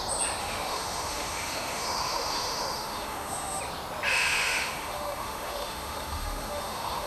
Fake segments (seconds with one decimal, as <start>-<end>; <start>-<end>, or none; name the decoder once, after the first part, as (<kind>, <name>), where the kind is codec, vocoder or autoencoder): 0.4-3.6 (autoencoder, DAC-VAE); 4.1-7.1